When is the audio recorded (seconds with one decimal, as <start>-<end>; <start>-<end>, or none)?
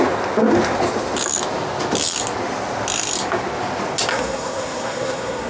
0.0-4.1